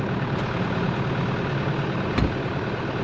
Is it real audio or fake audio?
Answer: real